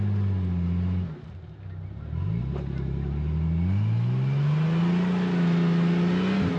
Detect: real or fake real